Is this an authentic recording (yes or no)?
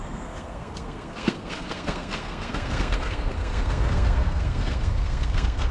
no